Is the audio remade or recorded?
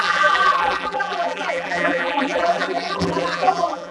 remade